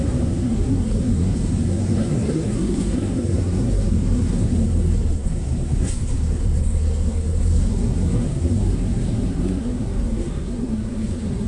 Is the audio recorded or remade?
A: remade